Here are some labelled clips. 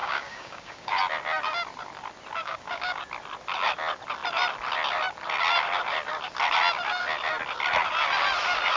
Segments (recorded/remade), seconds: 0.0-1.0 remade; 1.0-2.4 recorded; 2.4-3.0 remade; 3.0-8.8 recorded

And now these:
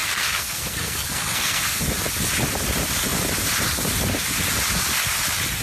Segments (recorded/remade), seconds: 0.0-1.8 remade; 1.8-5.6 recorded